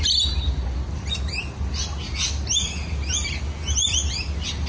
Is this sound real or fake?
real